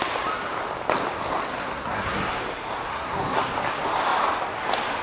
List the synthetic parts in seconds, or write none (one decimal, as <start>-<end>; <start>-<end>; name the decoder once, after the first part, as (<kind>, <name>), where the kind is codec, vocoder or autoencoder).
1.6-2.4 (codec, SNAC); 2.9-3.4

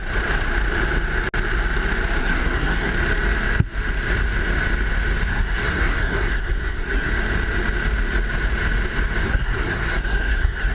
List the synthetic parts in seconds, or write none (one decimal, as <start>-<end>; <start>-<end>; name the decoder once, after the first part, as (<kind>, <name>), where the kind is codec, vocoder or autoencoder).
2.2-2.9 (codec, SNAC); 5.3-7.1; 9.3-10.7